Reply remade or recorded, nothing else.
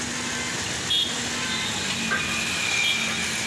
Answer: recorded